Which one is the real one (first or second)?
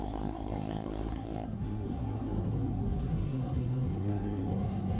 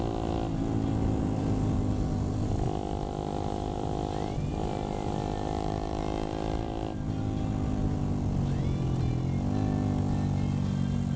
second